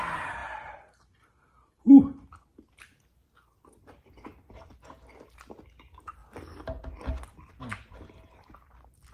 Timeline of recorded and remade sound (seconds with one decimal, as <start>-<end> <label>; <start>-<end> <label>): 0.0-9.1 recorded